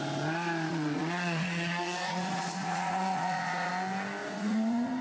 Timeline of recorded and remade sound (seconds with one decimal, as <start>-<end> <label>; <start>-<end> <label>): 0.0-0.7 recorded; 0.7-3.7 remade; 3.7-4.2 recorded; 4.2-5.0 remade